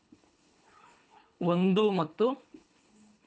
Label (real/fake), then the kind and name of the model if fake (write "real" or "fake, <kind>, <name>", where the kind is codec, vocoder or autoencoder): fake, codec, HILCodec